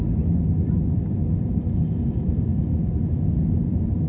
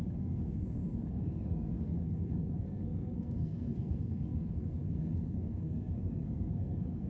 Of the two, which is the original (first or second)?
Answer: first